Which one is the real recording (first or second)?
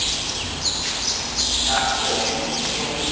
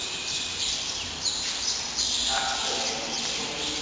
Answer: first